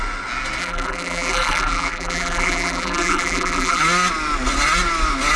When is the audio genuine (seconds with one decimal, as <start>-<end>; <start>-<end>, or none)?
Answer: 0.0-0.6; 3.8-5.4